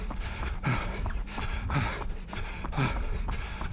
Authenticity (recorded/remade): recorded